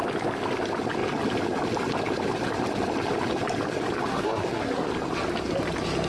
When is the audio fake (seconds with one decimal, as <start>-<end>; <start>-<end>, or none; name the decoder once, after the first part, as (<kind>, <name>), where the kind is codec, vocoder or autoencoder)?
4.1-4.9 (codec, SNAC)